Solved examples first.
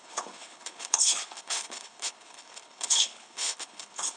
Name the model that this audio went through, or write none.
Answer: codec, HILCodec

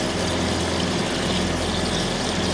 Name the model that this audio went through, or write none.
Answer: none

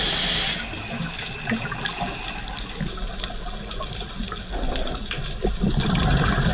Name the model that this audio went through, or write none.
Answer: none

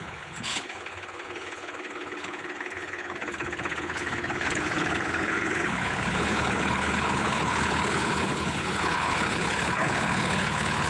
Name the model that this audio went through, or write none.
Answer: codec, HILCodec